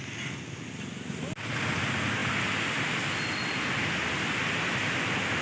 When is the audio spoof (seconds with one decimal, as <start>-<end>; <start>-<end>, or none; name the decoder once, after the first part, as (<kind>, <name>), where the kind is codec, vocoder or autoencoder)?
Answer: none